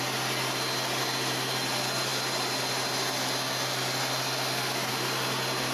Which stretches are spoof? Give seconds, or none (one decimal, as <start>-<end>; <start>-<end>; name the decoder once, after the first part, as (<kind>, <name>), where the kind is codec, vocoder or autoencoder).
none